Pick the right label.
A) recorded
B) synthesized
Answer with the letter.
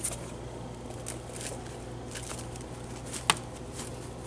A